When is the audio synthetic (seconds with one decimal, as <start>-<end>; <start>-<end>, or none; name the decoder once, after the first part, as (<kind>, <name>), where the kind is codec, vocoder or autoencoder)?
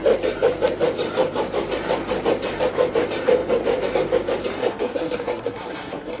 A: 4.6-6.2 (codec, SNAC)